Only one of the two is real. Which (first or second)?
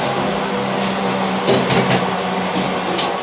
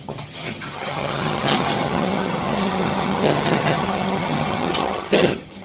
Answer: first